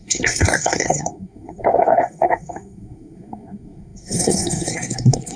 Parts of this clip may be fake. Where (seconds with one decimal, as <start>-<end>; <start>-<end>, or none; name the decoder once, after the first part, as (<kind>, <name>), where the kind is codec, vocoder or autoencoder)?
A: 0.0-5.4 (codec, SNAC)